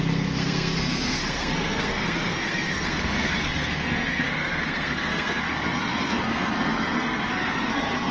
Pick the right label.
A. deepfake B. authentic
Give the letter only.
A